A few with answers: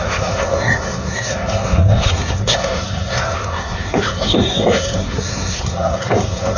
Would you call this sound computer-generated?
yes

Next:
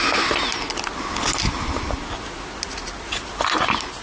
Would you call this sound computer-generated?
no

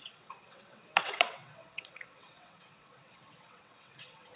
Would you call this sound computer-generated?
yes